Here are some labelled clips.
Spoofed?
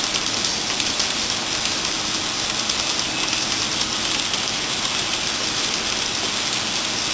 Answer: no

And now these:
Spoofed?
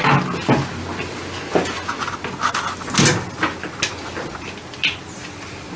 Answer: no